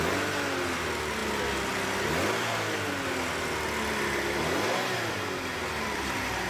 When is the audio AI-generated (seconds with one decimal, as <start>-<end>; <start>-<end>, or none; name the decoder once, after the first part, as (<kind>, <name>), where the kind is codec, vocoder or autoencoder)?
none